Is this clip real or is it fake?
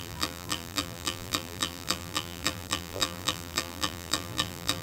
fake